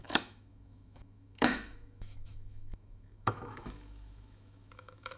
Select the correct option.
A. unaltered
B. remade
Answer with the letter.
B